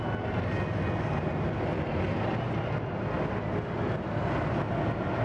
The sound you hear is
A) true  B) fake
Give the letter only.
A